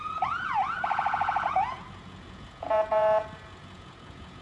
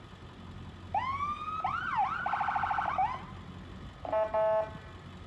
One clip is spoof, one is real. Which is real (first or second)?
second